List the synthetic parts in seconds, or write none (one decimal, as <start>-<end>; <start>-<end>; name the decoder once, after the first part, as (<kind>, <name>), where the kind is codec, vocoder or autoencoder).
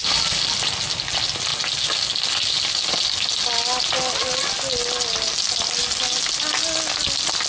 none